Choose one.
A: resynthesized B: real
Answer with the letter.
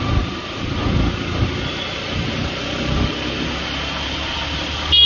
B